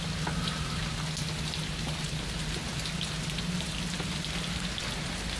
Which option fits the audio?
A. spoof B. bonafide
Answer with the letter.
B